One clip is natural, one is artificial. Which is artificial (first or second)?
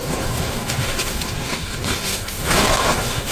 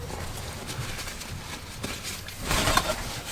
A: first